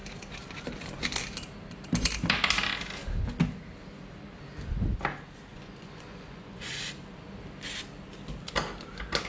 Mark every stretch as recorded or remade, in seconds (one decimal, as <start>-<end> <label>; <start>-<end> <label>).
0.0-5.5 recorded; 5.5-6.9 remade; 6.9-9.3 recorded

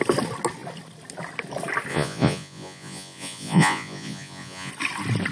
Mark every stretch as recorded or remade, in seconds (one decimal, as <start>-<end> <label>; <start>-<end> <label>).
0.0-1.9 recorded; 1.9-4.7 remade; 4.7-5.3 recorded

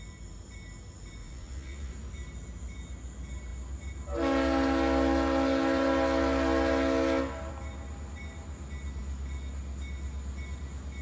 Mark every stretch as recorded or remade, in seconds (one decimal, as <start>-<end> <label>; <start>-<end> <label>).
0.0-1.2 recorded; 1.2-1.9 remade; 1.9-11.0 recorded

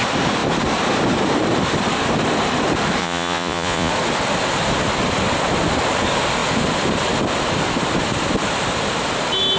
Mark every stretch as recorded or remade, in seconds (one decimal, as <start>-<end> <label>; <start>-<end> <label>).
0.0-3.0 recorded; 3.0-3.9 remade; 3.9-9.6 recorded

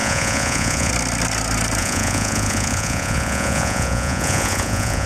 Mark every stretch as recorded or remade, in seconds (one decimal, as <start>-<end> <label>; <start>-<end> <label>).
0.0-0.9 remade; 0.9-1.8 recorded; 1.8-5.1 remade

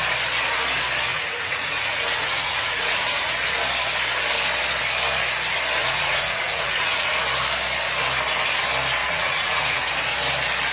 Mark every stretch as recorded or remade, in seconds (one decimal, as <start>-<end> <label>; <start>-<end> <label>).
0.0-1.1 recorded; 1.1-3.3 remade; 3.3-5.8 recorded; 5.8-7.1 remade; 7.1-9.0 recorded; 9.0-9.9 remade; 9.9-10.7 recorded